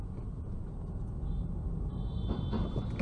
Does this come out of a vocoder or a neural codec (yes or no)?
no